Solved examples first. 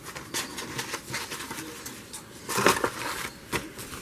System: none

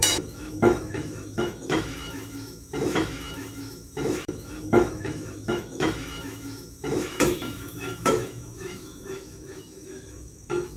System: autoencoder, DAC-VAE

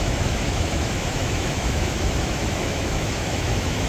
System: autoencoder, DAC-VAE